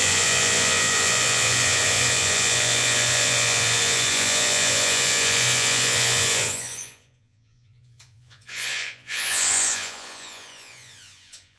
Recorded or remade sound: remade